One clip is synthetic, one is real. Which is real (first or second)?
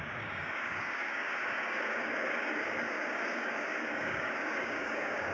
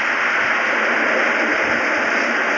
second